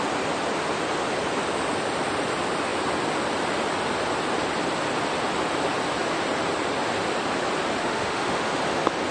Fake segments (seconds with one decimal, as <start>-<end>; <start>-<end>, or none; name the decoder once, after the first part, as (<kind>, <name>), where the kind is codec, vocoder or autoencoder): 7.8-8.5 (autoencoder, DAC-VAE)